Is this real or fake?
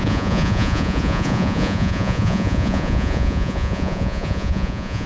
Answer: fake